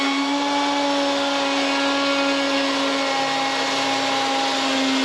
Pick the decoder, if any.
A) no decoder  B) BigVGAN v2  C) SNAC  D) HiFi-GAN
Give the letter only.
A